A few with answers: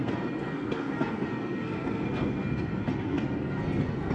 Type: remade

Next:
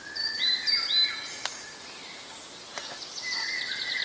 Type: recorded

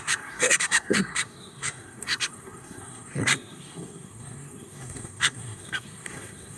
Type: remade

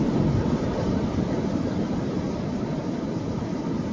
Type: recorded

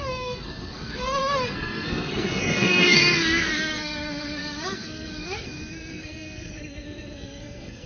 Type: remade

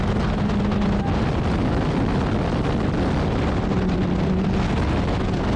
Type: recorded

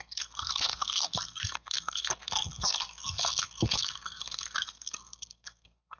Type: remade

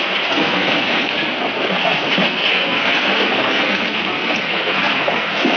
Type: remade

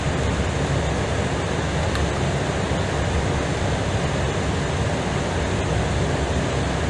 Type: recorded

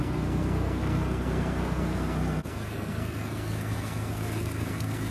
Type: remade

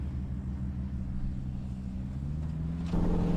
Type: recorded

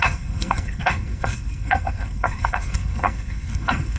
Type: remade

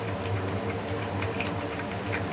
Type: recorded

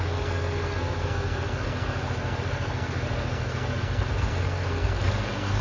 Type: remade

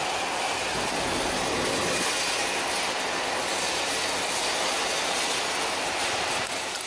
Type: recorded